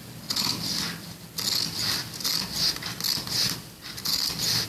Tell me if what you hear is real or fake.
real